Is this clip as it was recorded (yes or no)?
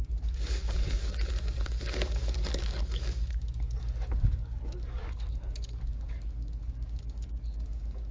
no